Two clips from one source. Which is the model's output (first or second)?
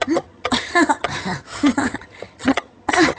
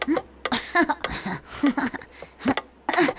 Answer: first